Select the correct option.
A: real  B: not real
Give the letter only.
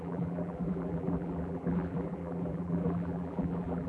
B